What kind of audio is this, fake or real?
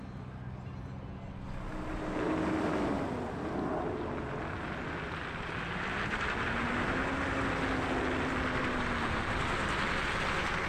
real